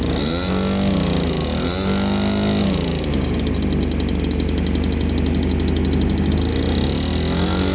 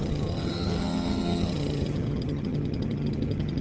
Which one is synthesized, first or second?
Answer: second